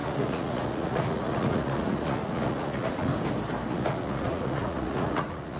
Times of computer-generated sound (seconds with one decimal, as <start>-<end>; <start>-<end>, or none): 0.0-3.1; 3.7-5.6